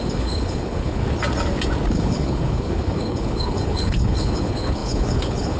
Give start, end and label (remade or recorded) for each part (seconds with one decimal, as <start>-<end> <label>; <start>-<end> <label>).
0.0-1.0 remade; 1.0-1.9 recorded; 1.9-5.6 remade